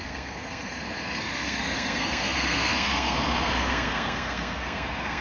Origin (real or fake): fake